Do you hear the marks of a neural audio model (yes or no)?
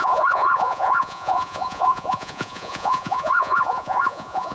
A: yes